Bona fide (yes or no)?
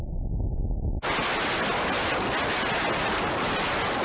yes